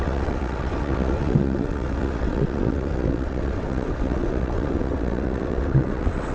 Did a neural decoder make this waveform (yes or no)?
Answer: yes